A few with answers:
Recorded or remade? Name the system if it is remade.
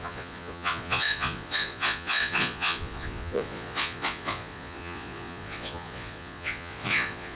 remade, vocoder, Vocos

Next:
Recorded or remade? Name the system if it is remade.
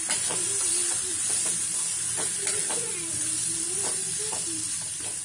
remade, vocoder, BigVGAN v2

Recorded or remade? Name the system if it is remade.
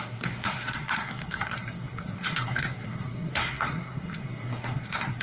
remade, codec, SNAC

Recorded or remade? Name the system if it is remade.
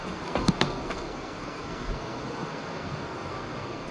remade, codec, SNAC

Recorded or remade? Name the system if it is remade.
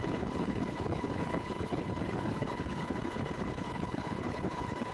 remade, codec, HILCodec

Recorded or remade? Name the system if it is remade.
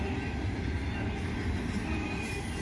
recorded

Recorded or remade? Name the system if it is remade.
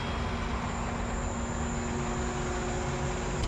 recorded